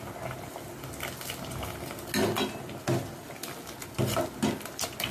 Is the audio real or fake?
real